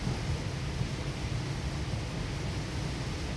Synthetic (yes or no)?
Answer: no